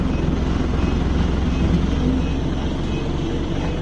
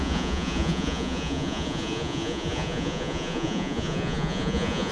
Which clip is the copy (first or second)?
second